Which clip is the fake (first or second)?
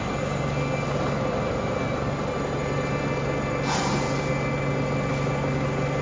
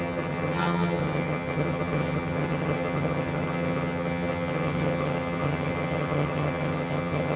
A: second